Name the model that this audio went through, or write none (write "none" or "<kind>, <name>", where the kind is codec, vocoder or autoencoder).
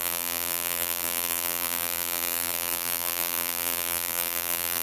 vocoder, BigVGAN v2